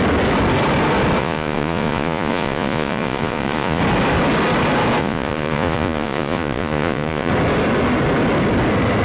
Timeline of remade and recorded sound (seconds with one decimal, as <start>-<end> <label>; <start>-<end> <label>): 0.0-1.2 recorded; 1.2-3.8 remade; 3.8-5.0 recorded; 5.0-7.3 remade; 7.3-9.0 recorded